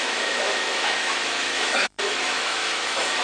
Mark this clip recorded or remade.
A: remade